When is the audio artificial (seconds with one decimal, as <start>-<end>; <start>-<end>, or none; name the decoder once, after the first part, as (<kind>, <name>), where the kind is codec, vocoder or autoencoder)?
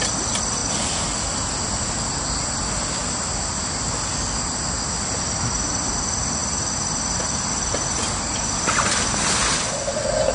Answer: none